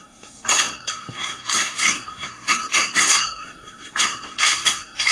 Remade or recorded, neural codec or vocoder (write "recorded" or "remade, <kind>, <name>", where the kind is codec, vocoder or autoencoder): remade, codec, SNAC